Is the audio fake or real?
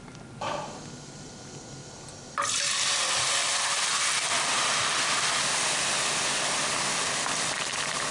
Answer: real